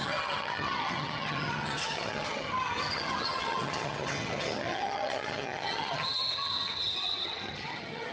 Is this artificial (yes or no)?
yes